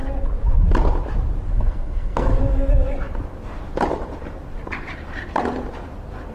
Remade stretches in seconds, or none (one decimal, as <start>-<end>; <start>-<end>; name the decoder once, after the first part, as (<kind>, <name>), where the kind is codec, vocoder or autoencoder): 1.5-2.4 (codec, SNAC)